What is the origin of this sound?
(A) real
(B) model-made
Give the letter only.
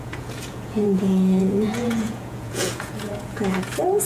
B